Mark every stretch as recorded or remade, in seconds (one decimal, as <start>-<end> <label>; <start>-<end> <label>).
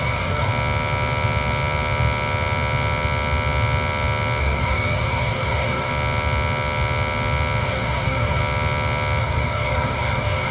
0.0-0.5 remade; 0.5-4.4 recorded; 4.4-5.9 remade; 5.9-7.6 recorded; 7.6-8.4 remade; 8.4-9.2 recorded; 9.2-10.5 remade